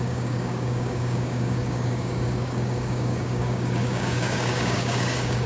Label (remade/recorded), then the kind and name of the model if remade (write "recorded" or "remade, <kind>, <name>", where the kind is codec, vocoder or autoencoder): remade, codec, DAC